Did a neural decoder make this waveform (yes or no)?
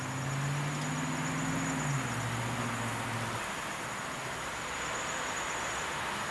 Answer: no